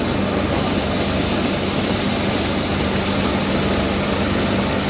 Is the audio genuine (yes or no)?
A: yes